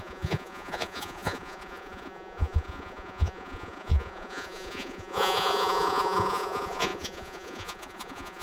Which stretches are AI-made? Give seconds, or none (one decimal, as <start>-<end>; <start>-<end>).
0.0-8.4